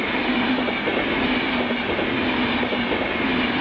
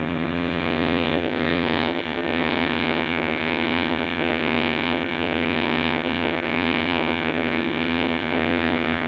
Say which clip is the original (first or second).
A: first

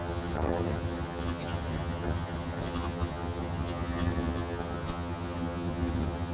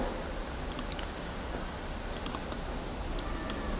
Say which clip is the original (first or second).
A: second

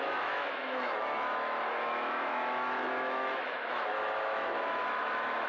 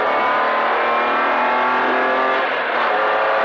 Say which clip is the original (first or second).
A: second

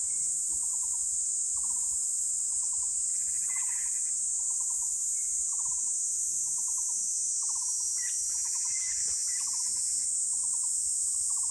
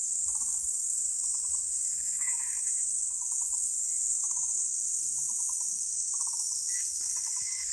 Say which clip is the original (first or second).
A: first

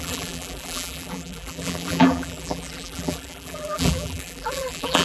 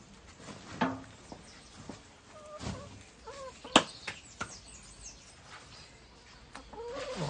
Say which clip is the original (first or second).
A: second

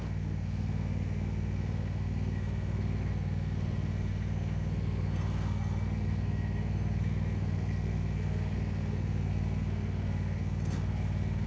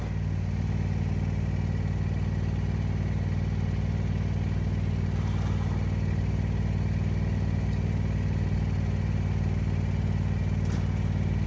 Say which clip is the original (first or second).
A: second